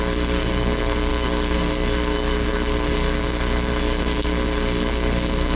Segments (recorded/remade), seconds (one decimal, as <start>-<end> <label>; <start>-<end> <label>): 0.0-5.6 remade